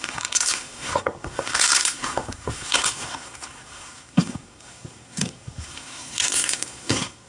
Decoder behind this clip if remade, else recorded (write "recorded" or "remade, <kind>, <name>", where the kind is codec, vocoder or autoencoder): remade, codec, SNAC